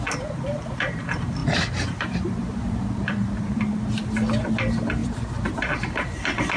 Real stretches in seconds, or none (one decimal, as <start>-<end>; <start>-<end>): 0.0-1.4; 3.6-5.0